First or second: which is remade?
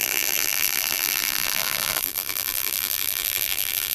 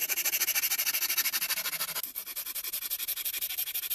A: first